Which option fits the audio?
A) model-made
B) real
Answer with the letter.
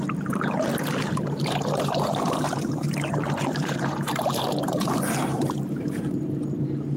A